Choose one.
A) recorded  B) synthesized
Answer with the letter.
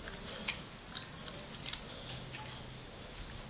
A